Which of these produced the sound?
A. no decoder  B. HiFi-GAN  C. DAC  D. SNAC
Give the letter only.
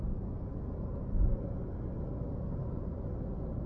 A